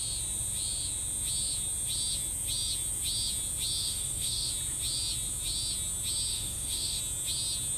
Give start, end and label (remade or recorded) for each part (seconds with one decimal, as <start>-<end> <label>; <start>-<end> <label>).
0.0-3.8 recorded; 3.8-4.5 remade; 4.5-6.3 recorded; 6.3-7.0 remade; 7.0-7.8 recorded